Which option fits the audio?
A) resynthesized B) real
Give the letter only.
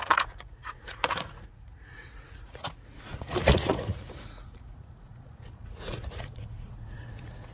A